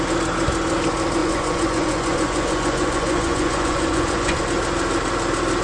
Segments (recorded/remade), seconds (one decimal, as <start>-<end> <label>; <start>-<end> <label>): 0.0-1.2 recorded; 1.2-4.4 remade; 4.4-5.6 recorded